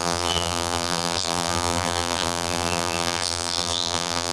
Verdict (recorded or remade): remade